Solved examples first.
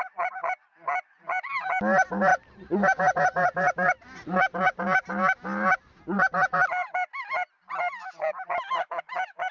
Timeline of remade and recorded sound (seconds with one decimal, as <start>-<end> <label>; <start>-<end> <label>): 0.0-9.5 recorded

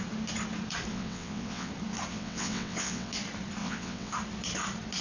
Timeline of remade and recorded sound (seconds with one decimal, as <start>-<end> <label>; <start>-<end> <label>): 0.0-0.9 recorded; 0.9-1.7 remade; 1.7-2.1 recorded; 2.1-3.1 remade; 3.1-3.6 recorded; 3.6-4.1 remade; 4.1-5.0 recorded

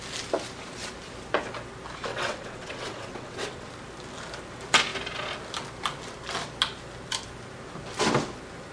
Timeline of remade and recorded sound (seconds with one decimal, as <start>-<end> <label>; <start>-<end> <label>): 0.0-2.1 recorded; 2.1-3.7 remade; 3.7-8.7 recorded

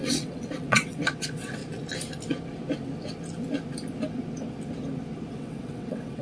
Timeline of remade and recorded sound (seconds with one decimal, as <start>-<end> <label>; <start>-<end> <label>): 0.0-1.6 remade; 1.6-5.3 recorded; 5.3-6.2 remade

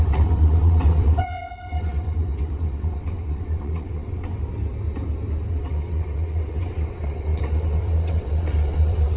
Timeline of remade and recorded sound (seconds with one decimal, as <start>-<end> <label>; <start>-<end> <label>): 0.0-4.4 remade; 4.4-5.5 recorded; 5.5-9.2 remade

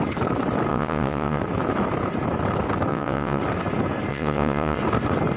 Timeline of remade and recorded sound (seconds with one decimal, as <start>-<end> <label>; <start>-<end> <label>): 0.0-0.7 recorded; 0.7-1.4 remade; 1.4-2.9 recorded; 2.9-3.4 remade; 3.4-4.1 recorded; 4.1-4.8 remade; 4.8-5.4 recorded